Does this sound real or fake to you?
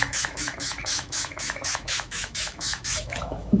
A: fake